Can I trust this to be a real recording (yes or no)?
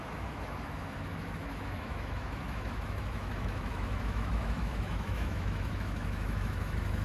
no